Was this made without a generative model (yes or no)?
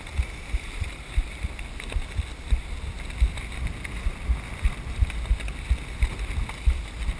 yes